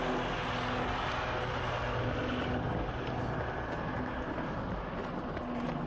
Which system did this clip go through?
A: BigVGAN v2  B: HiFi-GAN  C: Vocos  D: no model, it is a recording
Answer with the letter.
D